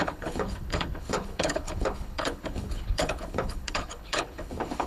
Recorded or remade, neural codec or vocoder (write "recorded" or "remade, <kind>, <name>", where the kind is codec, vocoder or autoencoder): remade, codec, HILCodec